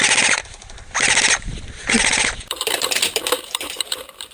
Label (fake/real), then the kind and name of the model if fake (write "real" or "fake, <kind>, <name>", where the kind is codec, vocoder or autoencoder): fake, vocoder, BigVGAN v2